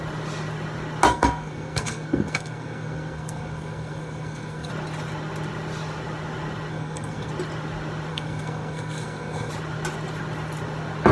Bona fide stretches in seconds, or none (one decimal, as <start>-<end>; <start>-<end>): 0.0-1.1; 4.7-6.7; 7.3-8.1; 9.5-11.1